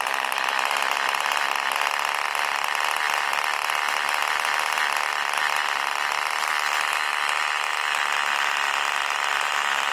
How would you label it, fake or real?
real